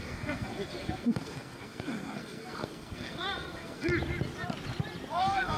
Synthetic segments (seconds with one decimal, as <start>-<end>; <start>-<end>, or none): 0.0-3.9; 5.1-5.6